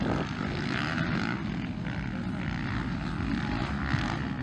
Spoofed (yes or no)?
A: no